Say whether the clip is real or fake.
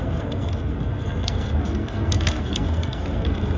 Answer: fake